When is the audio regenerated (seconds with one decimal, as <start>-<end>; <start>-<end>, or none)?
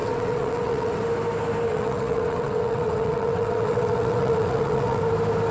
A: 0.0-1.0; 1.7-5.0